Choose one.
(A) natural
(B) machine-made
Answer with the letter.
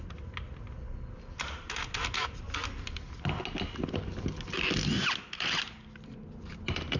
A